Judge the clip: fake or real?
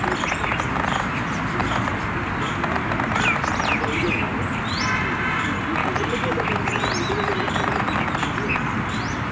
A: real